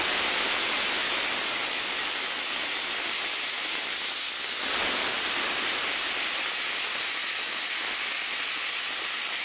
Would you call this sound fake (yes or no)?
no